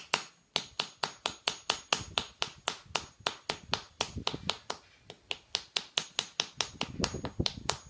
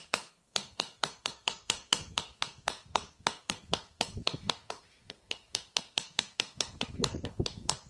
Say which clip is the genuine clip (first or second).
first